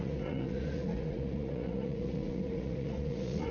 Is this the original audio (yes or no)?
no